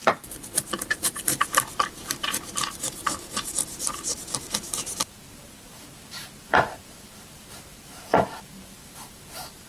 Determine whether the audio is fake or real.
fake